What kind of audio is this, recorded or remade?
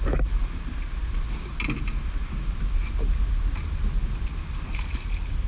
recorded